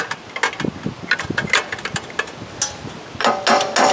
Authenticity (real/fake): real